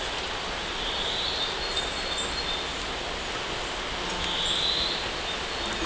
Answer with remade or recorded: recorded